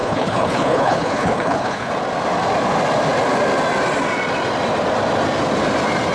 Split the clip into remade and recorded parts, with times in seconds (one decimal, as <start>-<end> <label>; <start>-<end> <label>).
0.0-1.9 remade; 1.9-6.1 recorded